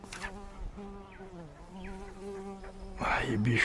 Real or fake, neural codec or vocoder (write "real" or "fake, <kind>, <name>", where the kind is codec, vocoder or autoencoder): real